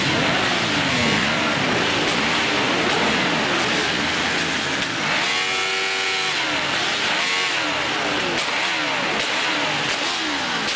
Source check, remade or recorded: recorded